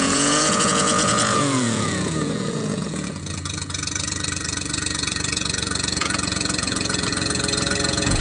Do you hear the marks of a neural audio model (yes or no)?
yes